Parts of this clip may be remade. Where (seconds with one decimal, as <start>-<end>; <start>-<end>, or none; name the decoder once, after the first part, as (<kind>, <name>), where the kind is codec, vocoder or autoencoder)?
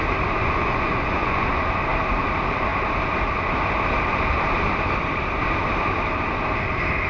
0.4-1.7 (vocoder, Vocos)